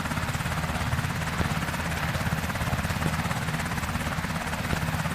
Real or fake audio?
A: real